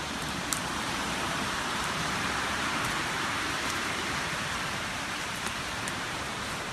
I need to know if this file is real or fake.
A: fake